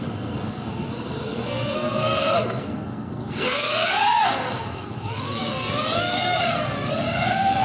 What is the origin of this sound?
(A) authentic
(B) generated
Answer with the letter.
B